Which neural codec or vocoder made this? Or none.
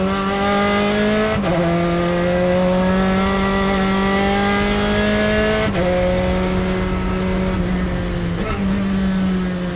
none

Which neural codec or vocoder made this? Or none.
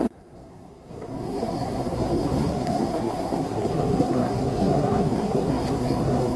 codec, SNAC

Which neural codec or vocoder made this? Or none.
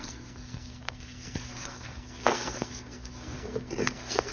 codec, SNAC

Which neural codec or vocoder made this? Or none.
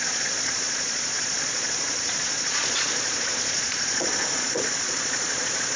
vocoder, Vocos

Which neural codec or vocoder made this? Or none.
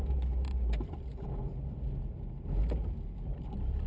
none